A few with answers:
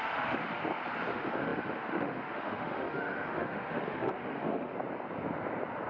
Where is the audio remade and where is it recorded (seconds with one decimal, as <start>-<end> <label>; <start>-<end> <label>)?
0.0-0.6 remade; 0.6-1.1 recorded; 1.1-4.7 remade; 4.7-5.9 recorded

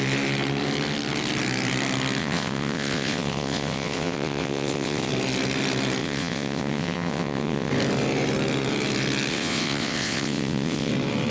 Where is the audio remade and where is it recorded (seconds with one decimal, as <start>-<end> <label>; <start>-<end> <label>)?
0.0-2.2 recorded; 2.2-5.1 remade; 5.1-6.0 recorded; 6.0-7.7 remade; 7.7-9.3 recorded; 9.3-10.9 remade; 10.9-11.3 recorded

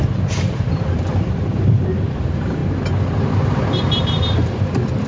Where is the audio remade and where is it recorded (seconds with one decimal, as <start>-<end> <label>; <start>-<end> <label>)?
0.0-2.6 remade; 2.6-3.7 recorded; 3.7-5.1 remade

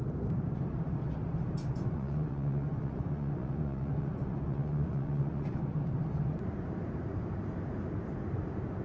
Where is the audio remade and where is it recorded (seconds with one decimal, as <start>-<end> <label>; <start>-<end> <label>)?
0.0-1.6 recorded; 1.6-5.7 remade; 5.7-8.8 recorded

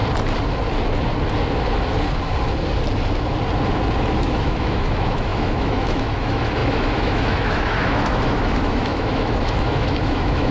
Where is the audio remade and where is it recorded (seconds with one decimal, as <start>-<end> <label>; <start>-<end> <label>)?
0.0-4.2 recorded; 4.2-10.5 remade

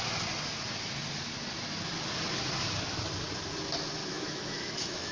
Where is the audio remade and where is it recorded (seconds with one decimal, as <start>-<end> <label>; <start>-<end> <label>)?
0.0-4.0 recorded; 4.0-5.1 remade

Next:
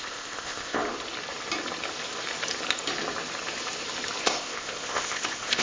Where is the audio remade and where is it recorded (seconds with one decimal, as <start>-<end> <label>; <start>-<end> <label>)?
0.0-0.8 remade; 0.8-4.2 recorded; 4.2-5.6 remade